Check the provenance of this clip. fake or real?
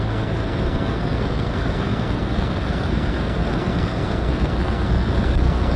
fake